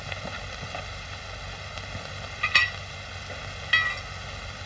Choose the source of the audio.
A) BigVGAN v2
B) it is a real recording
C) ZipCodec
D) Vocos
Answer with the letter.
B